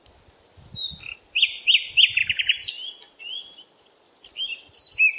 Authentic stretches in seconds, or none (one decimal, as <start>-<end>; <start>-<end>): 0.0-5.2